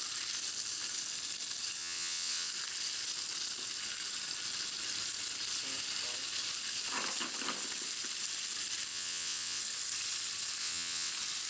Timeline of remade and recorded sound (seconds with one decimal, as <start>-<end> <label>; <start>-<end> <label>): 0.0-1.8 recorded; 1.8-2.5 remade; 2.5-8.9 recorded; 8.9-9.6 remade; 9.6-10.6 recorded; 10.6-11.1 remade; 11.1-11.5 recorded